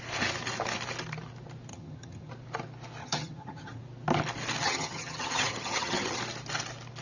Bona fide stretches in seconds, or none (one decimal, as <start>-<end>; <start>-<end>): 0.0-1.7; 2.3-3.0; 3.8-4.6; 6.2-7.0